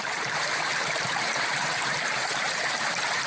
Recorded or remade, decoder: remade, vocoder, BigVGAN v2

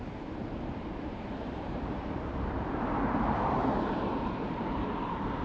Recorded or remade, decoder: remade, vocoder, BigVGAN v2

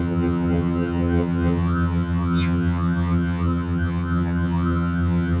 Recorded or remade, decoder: remade, vocoder, HiFi-GAN